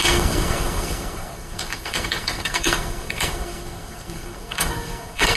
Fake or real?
fake